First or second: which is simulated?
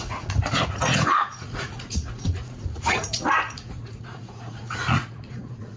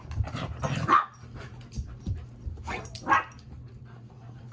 first